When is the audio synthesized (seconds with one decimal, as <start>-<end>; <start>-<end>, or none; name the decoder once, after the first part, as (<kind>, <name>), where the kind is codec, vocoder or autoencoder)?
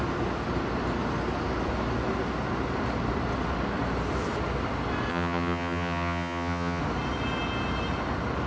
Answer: 5.1-6.8 (vocoder, HiFi-GAN)